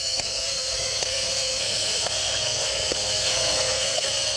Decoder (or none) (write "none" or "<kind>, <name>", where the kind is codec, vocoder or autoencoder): codec, SNAC